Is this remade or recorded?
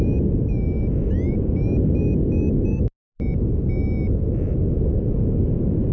recorded